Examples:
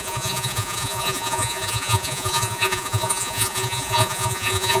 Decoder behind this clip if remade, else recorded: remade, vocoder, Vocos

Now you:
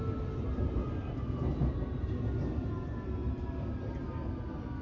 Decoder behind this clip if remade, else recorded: recorded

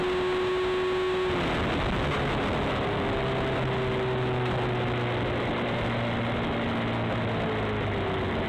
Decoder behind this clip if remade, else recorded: recorded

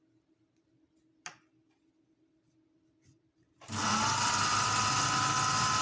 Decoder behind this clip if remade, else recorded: recorded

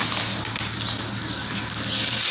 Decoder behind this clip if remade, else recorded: recorded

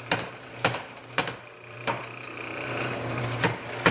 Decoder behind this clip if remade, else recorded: remade, vocoder, BigVGAN v2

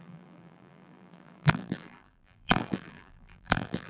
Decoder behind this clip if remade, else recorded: remade, vocoder, BigVGAN v2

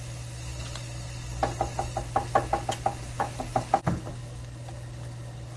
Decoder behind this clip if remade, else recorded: recorded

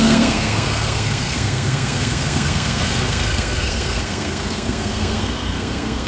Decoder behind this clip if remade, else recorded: remade, codec, SNAC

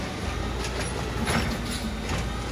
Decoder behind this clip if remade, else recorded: recorded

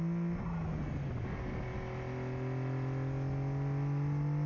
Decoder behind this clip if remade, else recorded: recorded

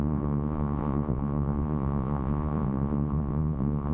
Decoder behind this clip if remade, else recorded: remade, vocoder, Vocos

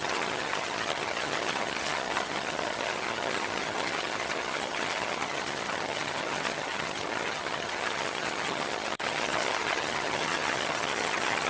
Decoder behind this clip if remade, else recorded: remade, vocoder, HiFi-GAN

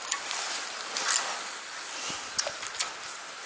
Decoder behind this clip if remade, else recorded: recorded